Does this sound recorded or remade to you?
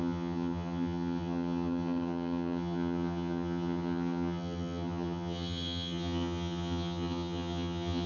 remade